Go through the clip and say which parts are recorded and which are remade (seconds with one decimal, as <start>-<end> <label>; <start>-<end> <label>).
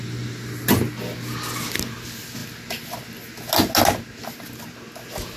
0.0-5.4 recorded